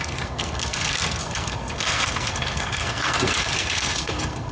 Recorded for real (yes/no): no